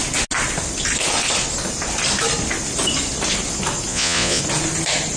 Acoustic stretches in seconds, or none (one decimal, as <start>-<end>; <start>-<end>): 0.0-3.9; 4.4-5.2